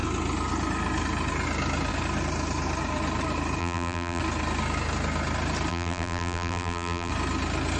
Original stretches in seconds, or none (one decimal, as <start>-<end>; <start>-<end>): 0.0-3.6; 4.2-5.7; 7.1-7.8